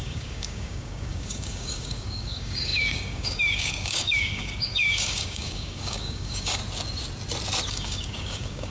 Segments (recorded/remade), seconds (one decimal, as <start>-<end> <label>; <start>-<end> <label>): 0.0-6.6 remade; 6.6-7.7 recorded; 7.7-8.7 remade

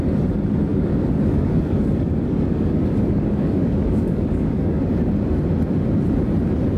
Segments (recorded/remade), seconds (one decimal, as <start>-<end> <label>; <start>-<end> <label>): 0.0-0.7 recorded; 0.7-4.8 remade; 4.8-6.8 recorded

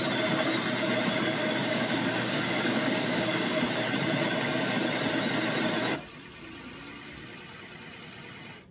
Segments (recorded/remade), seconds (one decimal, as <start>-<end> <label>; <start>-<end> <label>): 0.0-1.4 recorded; 1.4-3.6 remade; 3.6-8.7 recorded